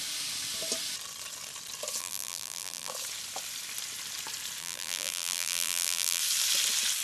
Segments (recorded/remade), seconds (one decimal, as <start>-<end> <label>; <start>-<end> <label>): 0.0-2.0 recorded; 2.0-2.9 remade; 2.9-4.6 recorded; 4.6-6.2 remade; 6.2-7.0 recorded